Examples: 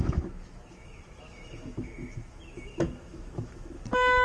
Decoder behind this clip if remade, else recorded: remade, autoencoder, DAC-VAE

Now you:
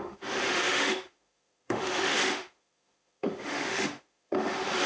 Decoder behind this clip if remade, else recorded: remade, autoencoder, DAC-VAE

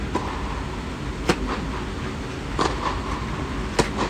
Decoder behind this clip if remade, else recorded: recorded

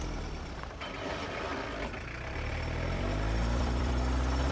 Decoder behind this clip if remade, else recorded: remade, vocoder, BigVGAN v2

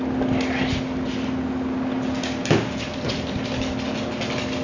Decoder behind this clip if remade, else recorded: recorded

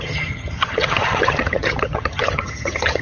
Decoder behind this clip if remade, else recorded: remade, vocoder, HiFi-GAN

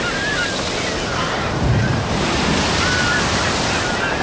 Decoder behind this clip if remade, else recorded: recorded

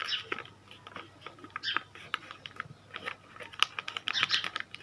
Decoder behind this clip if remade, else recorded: recorded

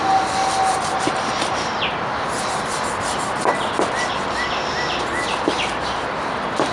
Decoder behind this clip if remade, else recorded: recorded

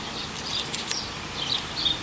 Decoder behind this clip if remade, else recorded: recorded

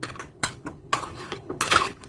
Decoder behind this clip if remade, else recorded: remade, codec, HILCodec